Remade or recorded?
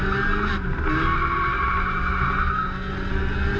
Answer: recorded